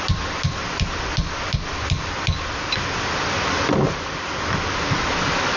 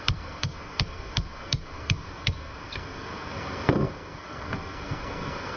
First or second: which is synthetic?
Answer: second